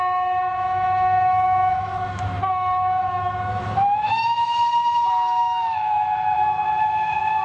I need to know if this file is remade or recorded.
remade